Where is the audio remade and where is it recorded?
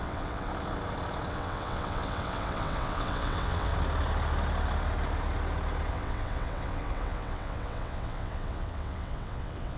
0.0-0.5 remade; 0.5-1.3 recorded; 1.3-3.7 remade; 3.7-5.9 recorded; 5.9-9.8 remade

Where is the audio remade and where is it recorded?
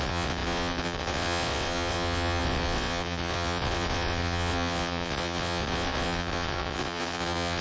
0.0-7.6 remade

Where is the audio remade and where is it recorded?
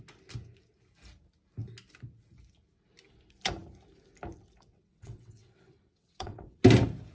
0.0-4.7 recorded; 4.7-6.6 remade; 6.6-7.1 recorded